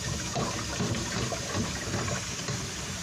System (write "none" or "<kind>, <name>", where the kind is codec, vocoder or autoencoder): vocoder, BigVGAN v2